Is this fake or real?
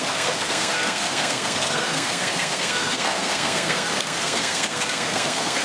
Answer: fake